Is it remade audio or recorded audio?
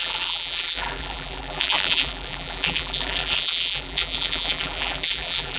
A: remade